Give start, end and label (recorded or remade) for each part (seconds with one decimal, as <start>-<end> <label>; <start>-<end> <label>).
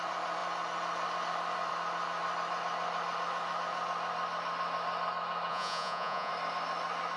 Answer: 0.0-5.5 recorded; 5.5-6.3 remade; 6.3-7.2 recorded